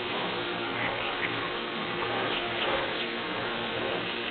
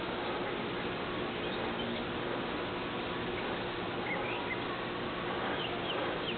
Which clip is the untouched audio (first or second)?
second